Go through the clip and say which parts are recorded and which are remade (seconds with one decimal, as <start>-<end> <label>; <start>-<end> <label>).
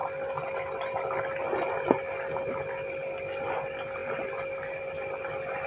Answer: 0.0-4.0 recorded; 4.0-4.8 remade; 4.8-5.7 recorded